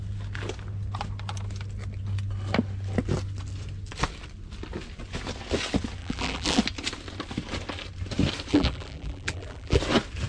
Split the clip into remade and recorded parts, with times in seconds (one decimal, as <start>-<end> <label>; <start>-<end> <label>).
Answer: 0.0-6.0 recorded; 6.0-6.6 remade; 6.6-8.5 recorded; 8.5-9.8 remade; 9.8-10.3 recorded